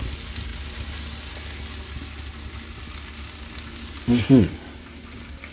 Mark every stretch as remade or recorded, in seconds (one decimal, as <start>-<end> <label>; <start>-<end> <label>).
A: 0.0-5.5 recorded